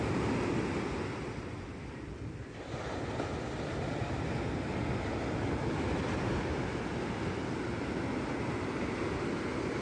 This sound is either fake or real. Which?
real